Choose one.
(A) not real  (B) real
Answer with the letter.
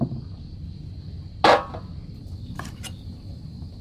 B